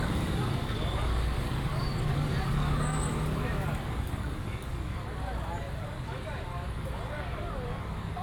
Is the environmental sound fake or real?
fake